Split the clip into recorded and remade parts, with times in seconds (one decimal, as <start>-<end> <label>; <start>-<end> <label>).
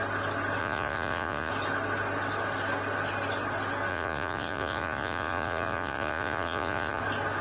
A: 0.0-0.6 recorded; 0.6-1.5 remade; 1.5-3.9 recorded; 3.9-7.0 remade; 7.0-7.4 recorded